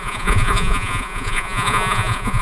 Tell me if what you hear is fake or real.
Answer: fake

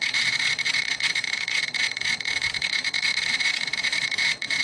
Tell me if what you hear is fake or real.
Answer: fake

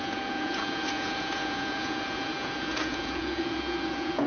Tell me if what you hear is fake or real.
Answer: fake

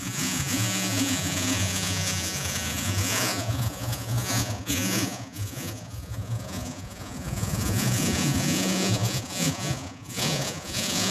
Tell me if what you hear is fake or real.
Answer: fake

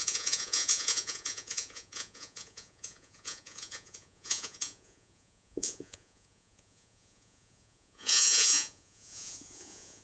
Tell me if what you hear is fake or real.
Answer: fake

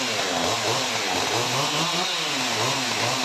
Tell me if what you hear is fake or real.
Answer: real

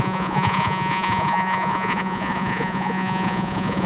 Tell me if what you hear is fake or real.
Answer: fake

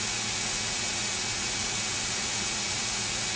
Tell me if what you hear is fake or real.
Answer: fake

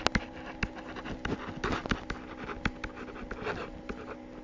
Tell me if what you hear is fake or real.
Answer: real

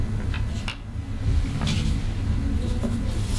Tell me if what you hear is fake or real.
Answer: real